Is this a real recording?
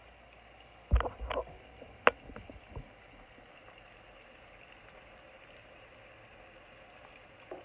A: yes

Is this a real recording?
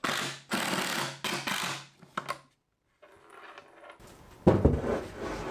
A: yes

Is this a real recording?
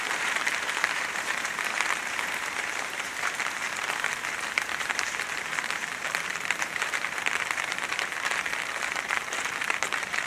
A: no